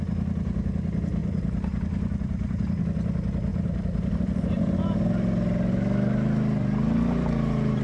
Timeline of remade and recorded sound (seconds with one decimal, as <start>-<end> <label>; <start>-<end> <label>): 0.0-1.2 recorded; 1.2-2.8 remade; 2.8-3.5 recorded; 3.5-4.6 remade; 4.6-7.8 recorded